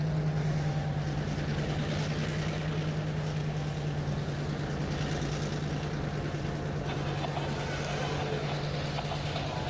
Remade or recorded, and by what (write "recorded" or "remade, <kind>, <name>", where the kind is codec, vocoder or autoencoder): recorded